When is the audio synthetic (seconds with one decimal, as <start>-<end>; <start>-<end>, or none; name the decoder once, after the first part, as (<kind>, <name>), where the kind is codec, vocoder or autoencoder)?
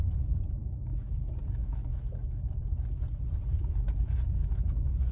0.6-1.2 (autoencoder, DAC-VAE); 1.6-2.6